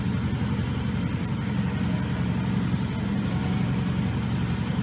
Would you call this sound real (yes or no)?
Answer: yes